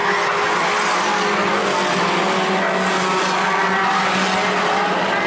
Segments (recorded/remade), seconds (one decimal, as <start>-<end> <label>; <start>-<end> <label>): 0.0-5.3 recorded